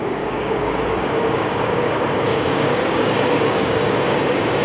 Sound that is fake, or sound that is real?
fake